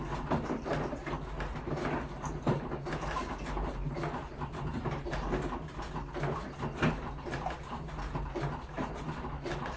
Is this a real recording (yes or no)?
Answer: yes